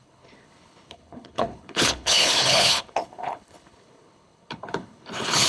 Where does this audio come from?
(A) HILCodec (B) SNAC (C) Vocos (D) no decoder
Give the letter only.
A